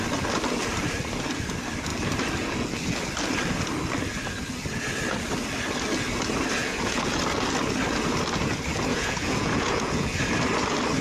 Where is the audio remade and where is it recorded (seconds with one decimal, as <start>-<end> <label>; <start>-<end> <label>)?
0.0-6.6 recorded; 6.6-7.2 remade; 7.2-8.9 recorded; 8.9-10.2 remade; 10.2-11.0 recorded